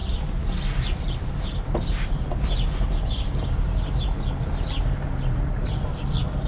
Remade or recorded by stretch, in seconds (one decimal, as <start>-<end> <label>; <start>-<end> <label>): 0.0-1.0 recorded; 1.0-3.3 remade; 3.3-5.8 recorded; 5.8-6.5 remade